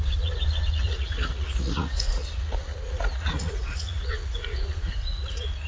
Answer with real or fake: fake